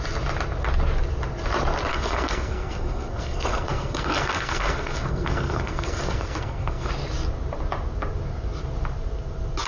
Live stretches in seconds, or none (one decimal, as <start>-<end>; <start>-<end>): 0.0-1.9; 6.9-9.7